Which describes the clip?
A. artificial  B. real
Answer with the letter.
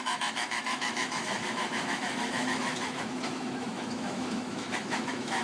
A